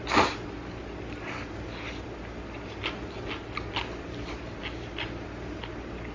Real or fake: real